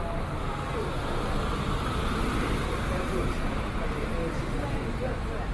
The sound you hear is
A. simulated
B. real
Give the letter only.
B